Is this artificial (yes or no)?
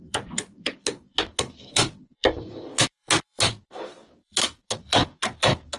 yes